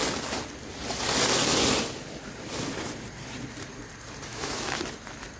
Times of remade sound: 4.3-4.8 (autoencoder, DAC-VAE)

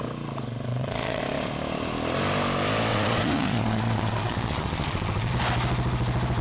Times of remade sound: 0.7-1.2 (vocoder, Vocos); 2.9-5.3

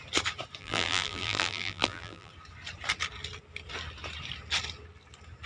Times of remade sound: 0.6-2.3 (vocoder, BigVGAN v2)

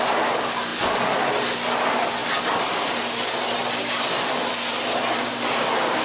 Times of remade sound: none

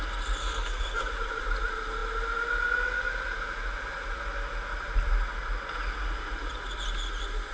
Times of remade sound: 0.4-1.1 (codec, SNAC)

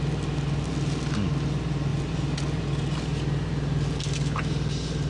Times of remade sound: none

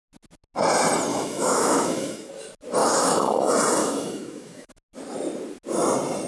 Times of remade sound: 1.1-2.3 (autoencoder, DAC-VAE); 2.8-3.4; 3.8-4.7